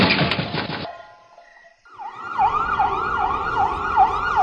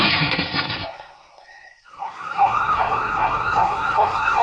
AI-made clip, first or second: second